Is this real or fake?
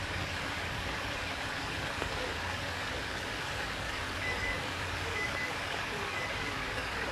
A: fake